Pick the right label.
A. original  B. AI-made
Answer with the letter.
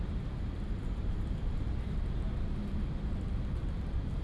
A